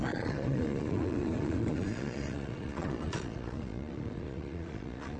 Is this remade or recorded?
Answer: remade